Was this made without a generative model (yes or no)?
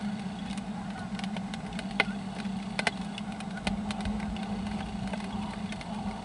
yes